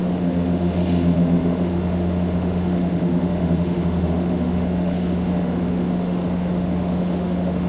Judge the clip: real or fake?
fake